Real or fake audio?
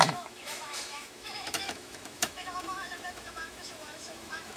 fake